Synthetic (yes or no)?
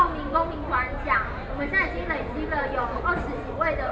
no